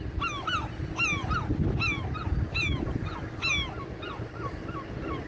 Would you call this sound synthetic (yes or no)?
no